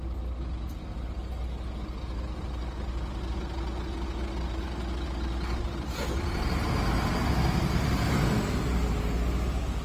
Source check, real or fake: real